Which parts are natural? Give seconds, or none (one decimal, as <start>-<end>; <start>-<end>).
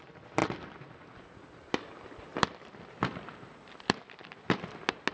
0.0-2.3; 3.0-5.1